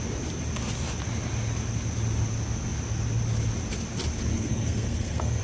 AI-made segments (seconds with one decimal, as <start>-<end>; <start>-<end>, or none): 4.3-5.4